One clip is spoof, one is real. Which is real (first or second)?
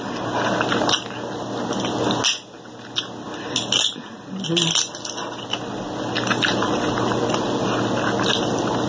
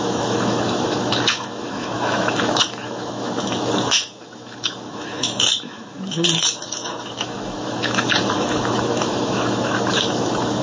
first